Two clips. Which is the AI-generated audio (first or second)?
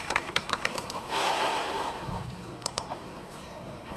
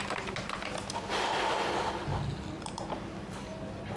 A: first